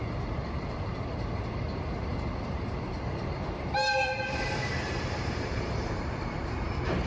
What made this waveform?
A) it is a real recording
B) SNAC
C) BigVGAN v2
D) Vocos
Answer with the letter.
C